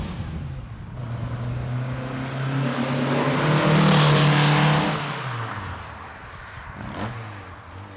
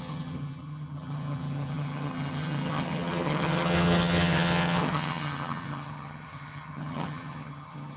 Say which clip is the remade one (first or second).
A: second